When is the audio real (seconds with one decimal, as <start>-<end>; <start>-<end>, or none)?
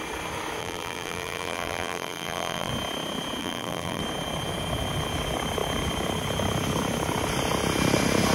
0.0-0.6; 2.7-3.4; 4.0-8.3